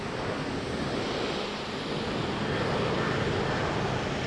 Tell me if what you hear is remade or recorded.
recorded